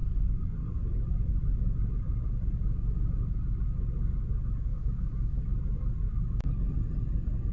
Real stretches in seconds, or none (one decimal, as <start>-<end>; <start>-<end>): 0.0-4.7; 5.4-7.5